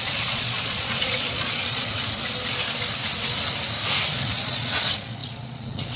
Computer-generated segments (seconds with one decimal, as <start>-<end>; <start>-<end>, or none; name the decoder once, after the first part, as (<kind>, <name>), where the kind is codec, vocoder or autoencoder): 0.0-1.9 (vocoder, Vocos); 4.1-6.0